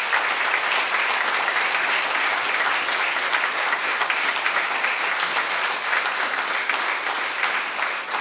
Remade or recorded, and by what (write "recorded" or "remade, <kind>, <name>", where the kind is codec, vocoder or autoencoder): recorded